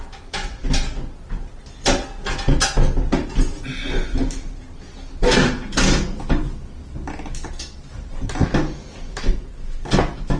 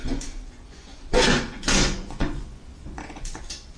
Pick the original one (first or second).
first